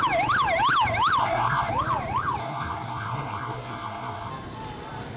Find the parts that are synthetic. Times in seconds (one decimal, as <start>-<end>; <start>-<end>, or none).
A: 1.2-1.7; 2.4-4.3